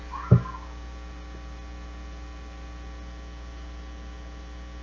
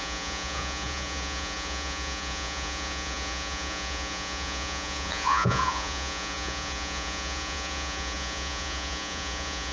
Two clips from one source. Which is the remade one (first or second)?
second